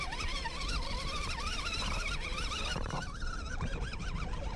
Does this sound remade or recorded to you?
remade